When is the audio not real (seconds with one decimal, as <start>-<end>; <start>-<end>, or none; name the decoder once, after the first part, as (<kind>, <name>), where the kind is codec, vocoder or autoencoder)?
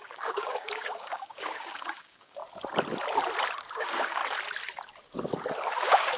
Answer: 0.0-2.4 (codec, DAC); 3.7-4.2; 5.7-6.2